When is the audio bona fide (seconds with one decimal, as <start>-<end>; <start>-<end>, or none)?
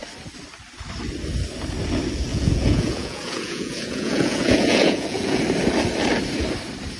0.0-2.3; 5.4-7.0